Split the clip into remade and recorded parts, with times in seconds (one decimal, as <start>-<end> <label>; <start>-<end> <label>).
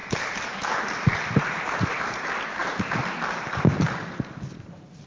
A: 0.0-5.1 recorded